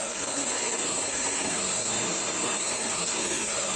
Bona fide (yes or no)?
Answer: no